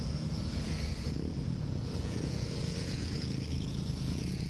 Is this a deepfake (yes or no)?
yes